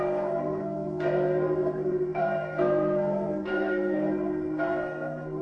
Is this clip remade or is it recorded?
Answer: remade